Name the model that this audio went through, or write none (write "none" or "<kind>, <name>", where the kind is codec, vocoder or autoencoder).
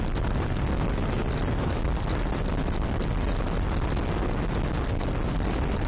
none